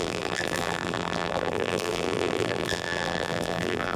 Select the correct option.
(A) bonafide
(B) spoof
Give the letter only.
B